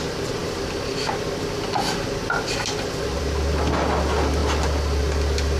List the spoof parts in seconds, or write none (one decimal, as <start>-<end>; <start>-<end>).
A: none